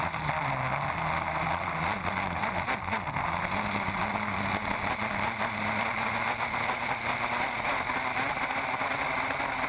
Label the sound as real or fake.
real